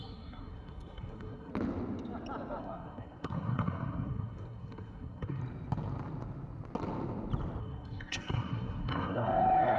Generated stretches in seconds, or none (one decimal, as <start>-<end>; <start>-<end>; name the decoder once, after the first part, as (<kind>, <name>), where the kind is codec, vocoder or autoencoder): 0.0-1.5 (codec, SNAC); 2.6-5.4; 7.6-9.8